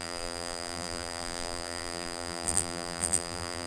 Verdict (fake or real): fake